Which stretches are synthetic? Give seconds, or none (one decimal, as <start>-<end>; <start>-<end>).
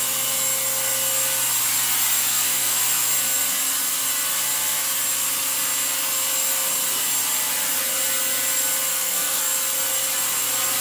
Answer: 2.3-2.8; 8.9-9.4